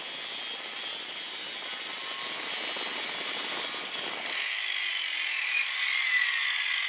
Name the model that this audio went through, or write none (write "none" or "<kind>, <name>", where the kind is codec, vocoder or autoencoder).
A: none